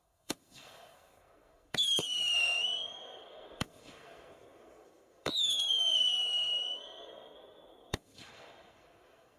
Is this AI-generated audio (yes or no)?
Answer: yes